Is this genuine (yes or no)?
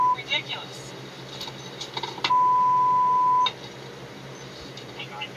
yes